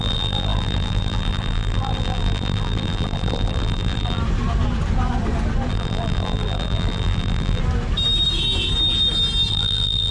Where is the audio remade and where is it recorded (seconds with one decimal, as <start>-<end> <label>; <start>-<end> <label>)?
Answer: 0.0-4.2 remade; 4.2-5.7 recorded; 5.7-7.6 remade; 7.6-9.5 recorded; 9.5-10.1 remade